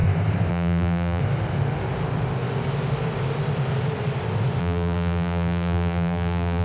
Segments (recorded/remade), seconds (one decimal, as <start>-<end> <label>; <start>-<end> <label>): 0.0-0.5 recorded; 0.5-1.2 remade; 1.2-4.6 recorded; 4.6-6.6 remade